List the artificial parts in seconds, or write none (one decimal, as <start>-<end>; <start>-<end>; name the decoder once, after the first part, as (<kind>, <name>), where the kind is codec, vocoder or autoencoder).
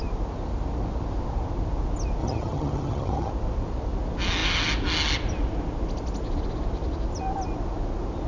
2.2-3.3 (vocoder, HiFi-GAN)